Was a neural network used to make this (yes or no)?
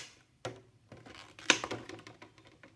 no